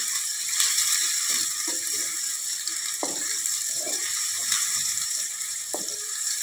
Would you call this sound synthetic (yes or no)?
yes